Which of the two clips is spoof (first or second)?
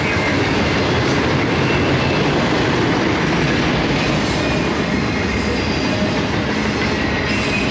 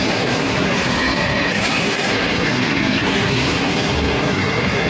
second